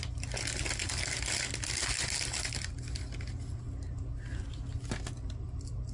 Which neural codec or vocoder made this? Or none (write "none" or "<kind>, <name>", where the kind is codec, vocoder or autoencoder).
none